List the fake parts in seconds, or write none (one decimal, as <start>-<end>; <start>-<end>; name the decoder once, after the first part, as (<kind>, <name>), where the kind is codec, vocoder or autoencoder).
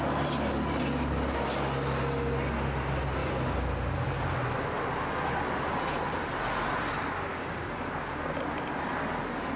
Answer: 7.3-7.9 (codec, DAC)